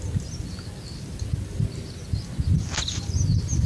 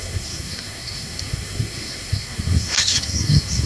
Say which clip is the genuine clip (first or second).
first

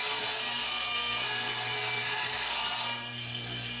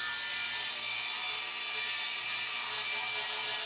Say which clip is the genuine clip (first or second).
second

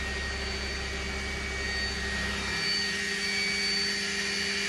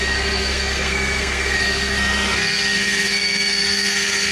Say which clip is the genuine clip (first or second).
first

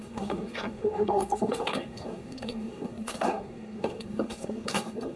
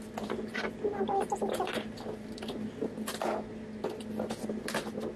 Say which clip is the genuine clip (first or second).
second